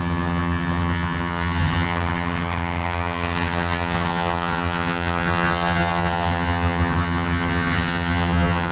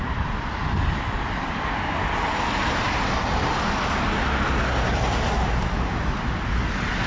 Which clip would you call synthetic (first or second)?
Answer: first